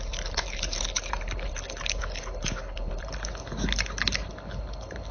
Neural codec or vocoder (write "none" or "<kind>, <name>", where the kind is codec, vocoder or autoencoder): none